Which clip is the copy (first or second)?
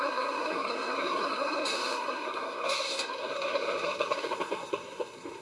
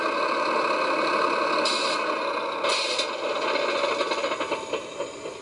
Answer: first